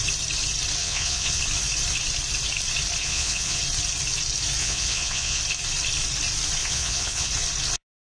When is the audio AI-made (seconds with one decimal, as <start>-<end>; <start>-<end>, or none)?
0.8-1.4; 3.0-3.6; 4.6-5.4; 6.6-7.3